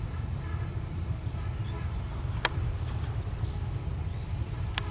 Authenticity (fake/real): real